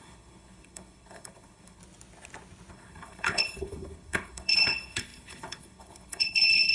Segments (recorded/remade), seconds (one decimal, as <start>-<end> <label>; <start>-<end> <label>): 0.0-1.8 remade; 1.8-2.7 recorded; 2.7-6.7 remade